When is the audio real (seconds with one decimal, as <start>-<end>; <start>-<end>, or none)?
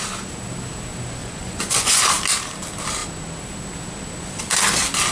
0.0-1.2; 2.0-5.1